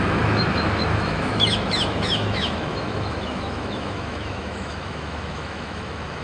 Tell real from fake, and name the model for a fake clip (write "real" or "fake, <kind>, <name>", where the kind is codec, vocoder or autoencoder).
fake, autoencoder, DAC-VAE